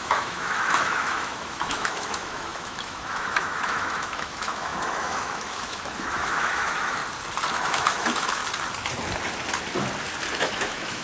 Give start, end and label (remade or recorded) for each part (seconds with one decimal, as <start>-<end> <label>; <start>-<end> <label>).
0.0-7.0 remade; 7.0-7.5 recorded; 7.5-8.4 remade; 8.4-10.3 recorded; 10.3-11.0 remade